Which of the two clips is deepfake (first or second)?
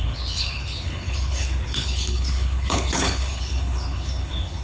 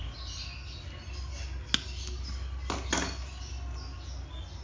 first